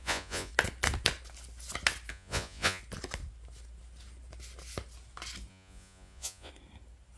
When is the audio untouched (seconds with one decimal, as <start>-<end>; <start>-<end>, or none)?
0.5-2.1; 2.8-5.5; 6.5-7.2